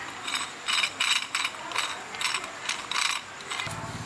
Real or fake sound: real